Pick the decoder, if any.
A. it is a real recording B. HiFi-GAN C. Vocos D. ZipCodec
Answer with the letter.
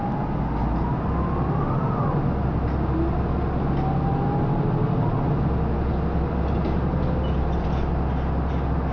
A